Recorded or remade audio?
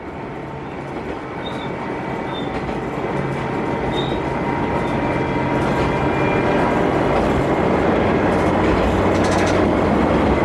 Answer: recorded